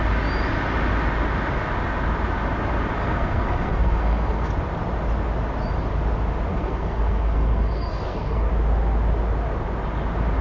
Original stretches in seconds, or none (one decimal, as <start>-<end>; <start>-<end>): 0.0-3.0; 4.5-6.5; 8.5-10.4